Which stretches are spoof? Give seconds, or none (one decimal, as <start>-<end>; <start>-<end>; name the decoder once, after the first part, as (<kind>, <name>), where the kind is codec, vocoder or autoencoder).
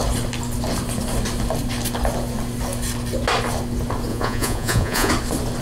4.1-5.1 (vocoder, Vocos)